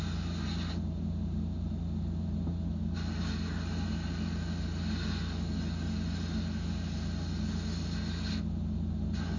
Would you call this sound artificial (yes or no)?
no